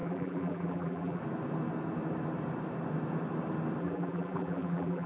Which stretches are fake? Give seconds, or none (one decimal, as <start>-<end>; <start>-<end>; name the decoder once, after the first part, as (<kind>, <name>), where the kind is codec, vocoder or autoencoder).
0.0-1.2 (vocoder, BigVGAN v2); 3.8-5.1